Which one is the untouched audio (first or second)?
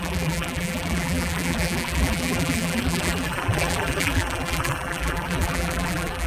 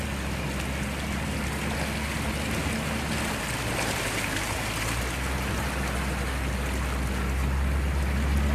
second